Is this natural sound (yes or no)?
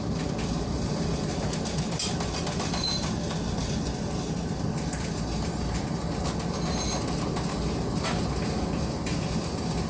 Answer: yes